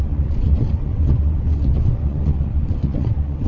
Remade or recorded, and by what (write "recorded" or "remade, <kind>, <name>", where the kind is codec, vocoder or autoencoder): remade, vocoder, WaveNeXt